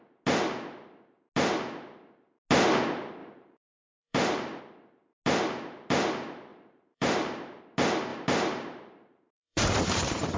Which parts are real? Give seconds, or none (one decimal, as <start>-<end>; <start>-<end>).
0.0-3.2; 4.6-6.5; 7.6-8.1